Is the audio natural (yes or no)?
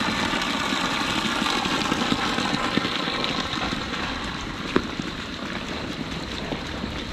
yes